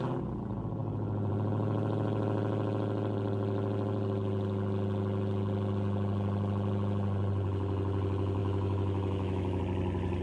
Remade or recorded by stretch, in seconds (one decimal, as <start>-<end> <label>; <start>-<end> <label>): 0.0-8.4 recorded; 8.4-9.6 remade; 9.6-10.2 recorded